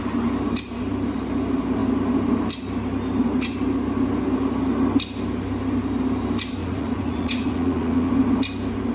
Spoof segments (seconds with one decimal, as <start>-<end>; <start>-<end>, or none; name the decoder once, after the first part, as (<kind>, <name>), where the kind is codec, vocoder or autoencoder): 6.6-8.1 (vocoder, Vocos)